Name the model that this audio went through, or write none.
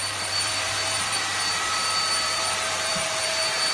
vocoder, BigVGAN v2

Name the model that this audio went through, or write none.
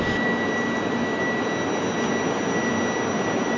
none